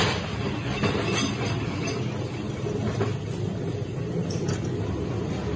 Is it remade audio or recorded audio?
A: recorded